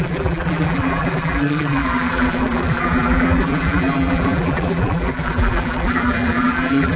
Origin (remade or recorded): remade